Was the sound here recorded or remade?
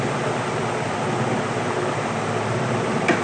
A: recorded